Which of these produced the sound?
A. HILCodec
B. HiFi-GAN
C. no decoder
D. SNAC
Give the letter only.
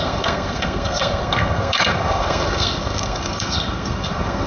D